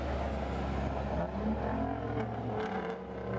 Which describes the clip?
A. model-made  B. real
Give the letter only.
B